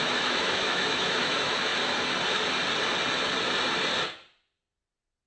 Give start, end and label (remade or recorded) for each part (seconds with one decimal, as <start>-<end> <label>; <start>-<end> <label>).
0.0-1.7 remade; 1.7-5.3 recorded